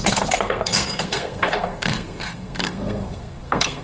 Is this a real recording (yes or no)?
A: no